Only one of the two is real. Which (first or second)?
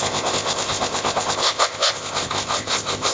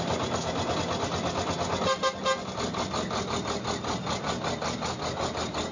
second